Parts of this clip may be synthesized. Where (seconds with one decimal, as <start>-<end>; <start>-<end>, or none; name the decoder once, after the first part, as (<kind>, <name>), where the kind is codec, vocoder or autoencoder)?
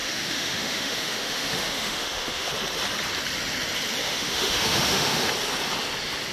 0.0-2.5 (autoencoder, DAC-VAE); 4.0-5.3